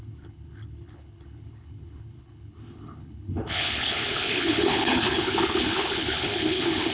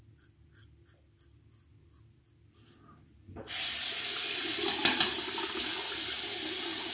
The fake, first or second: first